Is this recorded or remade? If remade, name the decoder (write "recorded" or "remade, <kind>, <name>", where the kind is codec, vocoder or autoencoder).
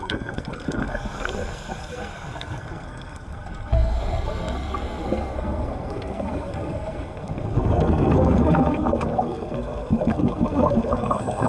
remade, codec, SNAC